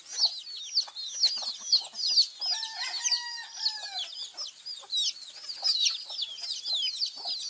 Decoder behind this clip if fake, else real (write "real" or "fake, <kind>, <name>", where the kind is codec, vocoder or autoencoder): real